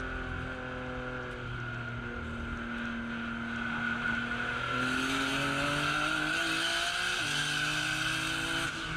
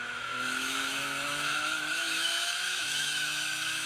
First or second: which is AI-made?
second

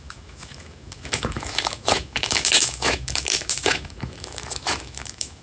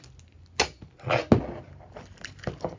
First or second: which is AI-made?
first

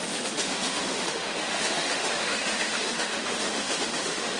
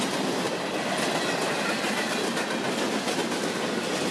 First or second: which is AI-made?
first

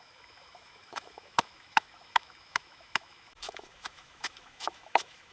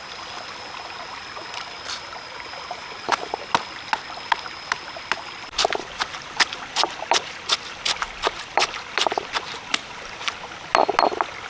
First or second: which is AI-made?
first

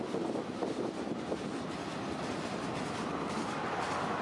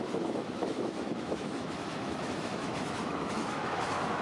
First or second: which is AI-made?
second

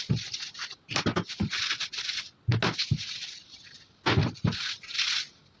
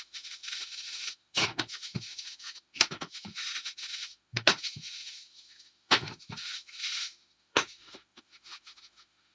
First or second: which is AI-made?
second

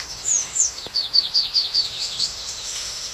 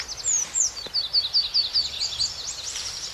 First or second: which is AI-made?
first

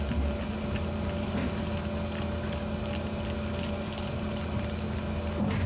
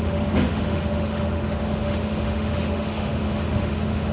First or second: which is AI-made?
second